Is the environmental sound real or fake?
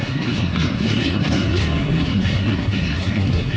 fake